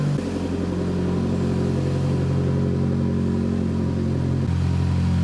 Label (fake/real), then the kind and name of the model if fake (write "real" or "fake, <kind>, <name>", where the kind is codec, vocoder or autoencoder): real